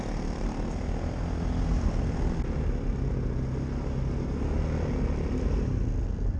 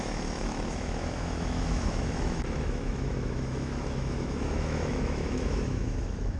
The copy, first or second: second